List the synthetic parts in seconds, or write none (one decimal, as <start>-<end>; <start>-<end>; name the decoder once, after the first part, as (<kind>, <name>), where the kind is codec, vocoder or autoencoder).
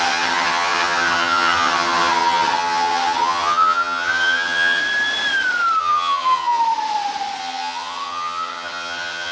0.0-4.8 (vocoder, HiFi-GAN); 5.8-6.6; 7.4-9.3